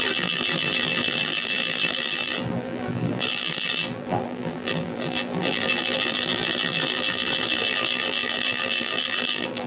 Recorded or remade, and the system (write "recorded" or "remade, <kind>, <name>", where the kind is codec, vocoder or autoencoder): remade, vocoder, BigVGAN v2